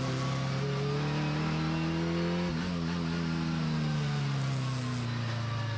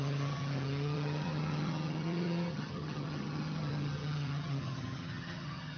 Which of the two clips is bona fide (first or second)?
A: first